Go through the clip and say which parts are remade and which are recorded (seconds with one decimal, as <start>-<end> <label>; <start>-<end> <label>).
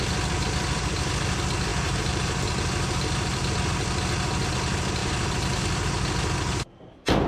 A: 0.0-1.7 recorded; 1.7-2.4 remade; 2.4-5.0 recorded; 5.0-5.6 remade; 5.6-7.3 recorded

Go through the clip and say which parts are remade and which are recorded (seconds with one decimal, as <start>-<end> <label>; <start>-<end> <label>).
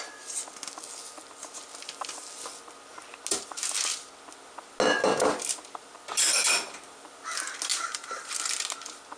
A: 0.0-7.7 recorded; 7.7-8.5 remade; 8.5-9.2 recorded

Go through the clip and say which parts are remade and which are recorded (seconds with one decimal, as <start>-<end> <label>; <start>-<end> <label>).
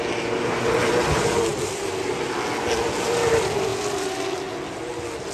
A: 0.0-5.3 recorded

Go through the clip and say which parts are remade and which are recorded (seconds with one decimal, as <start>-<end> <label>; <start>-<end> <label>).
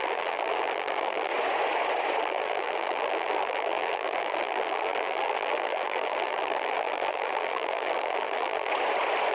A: 0.0-1.3 remade; 1.3-2.2 recorded; 2.2-8.7 remade; 8.7-9.3 recorded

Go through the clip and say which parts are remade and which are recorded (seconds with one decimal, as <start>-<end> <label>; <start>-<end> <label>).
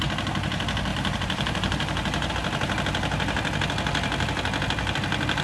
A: 0.0-0.9 recorded; 0.9-2.3 remade; 2.3-5.4 recorded